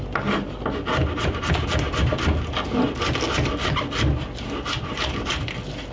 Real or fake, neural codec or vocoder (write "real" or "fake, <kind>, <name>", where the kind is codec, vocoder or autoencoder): real